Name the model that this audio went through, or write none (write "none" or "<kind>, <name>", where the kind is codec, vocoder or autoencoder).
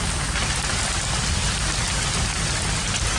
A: none